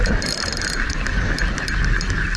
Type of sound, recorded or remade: recorded